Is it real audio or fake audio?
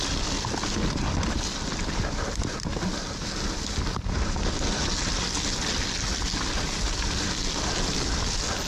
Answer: real